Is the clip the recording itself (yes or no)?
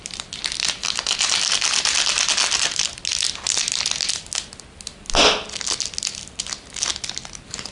yes